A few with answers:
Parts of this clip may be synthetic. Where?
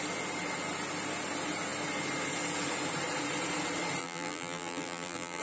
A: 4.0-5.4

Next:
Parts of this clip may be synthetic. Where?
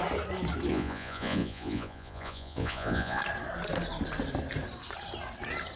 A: 0.7-3.2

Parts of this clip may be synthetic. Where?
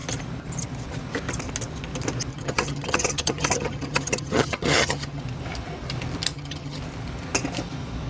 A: 2.3-5.2; 6.3-6.8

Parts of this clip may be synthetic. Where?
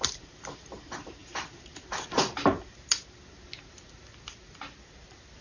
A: none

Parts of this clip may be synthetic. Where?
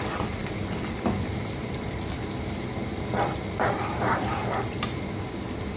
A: 0.4-2.1; 2.8-5.0